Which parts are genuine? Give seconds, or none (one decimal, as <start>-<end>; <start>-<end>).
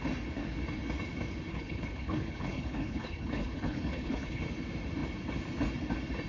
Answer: 0.0-1.5; 4.4-6.3